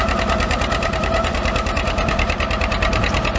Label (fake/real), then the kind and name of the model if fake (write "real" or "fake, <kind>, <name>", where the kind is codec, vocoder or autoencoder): fake, vocoder, BigVGAN v2